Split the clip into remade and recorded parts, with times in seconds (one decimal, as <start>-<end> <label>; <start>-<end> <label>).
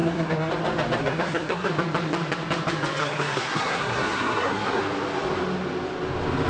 0.0-0.5 remade; 0.5-1.0 recorded; 1.0-1.7 remade; 1.7-3.0 recorded; 3.0-4.8 remade; 4.8-6.5 recorded